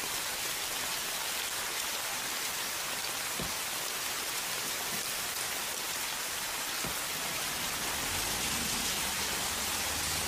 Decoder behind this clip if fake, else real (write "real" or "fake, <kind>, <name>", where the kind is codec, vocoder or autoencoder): real